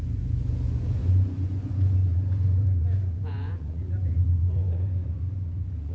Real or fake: fake